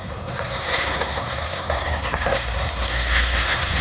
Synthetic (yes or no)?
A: yes